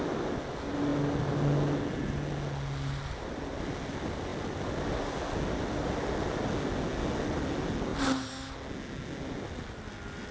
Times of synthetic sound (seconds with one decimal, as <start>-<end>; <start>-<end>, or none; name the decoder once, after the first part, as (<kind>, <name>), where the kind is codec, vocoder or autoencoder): none